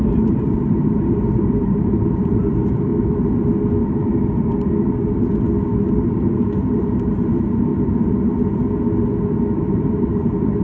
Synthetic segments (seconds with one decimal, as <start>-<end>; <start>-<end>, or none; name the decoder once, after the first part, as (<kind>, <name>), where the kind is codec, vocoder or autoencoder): 0.0-2.9 (vocoder, BigVGAN v2); 5.9-7.7; 9.6-10.6